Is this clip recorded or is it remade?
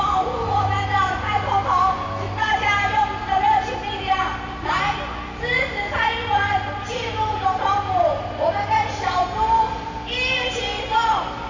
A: recorded